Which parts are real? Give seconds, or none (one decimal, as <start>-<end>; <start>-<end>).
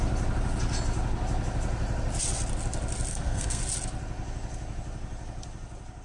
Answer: 0.0-3.1; 3.6-6.0